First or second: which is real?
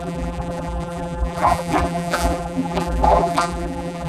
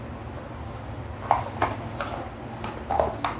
second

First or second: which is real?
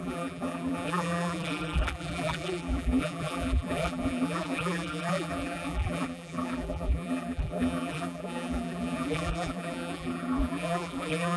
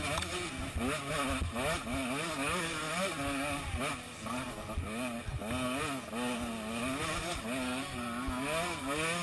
second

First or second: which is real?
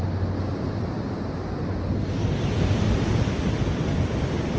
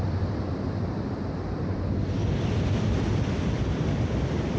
first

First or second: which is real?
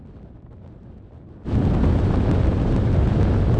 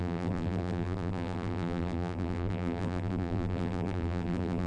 first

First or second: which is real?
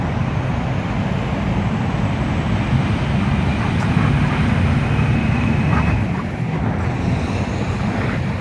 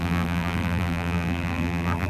first